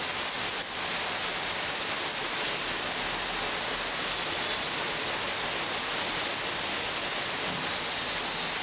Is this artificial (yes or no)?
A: no